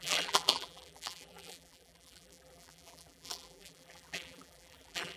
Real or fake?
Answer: fake